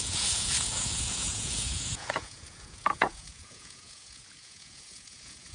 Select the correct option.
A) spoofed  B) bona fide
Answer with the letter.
A